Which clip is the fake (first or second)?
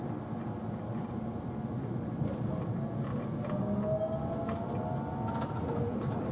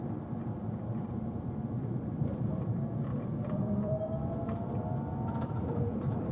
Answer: second